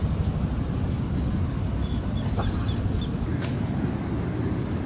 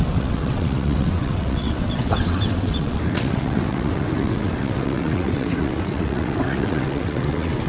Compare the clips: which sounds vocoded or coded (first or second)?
second